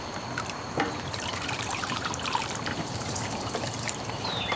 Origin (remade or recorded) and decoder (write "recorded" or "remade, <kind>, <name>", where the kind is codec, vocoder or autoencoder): remade, vocoder, BigVGAN v2